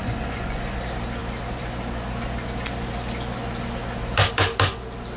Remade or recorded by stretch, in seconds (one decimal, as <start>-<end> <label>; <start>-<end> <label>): 0.0-0.6 remade; 0.6-5.2 recorded